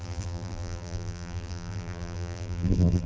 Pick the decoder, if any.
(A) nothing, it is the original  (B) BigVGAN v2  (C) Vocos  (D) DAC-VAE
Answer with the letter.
B